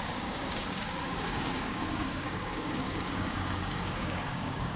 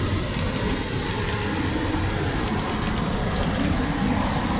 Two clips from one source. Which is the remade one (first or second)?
first